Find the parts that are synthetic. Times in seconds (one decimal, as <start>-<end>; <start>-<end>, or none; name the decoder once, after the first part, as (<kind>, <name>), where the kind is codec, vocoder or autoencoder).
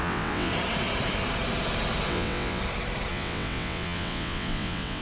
0.0-0.5 (vocoder, WaveNeXt); 2.1-2.6; 3.1-5.0